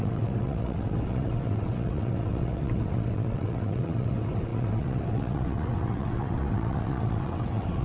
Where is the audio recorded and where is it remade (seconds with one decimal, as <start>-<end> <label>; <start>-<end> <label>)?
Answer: 0.0-7.8 remade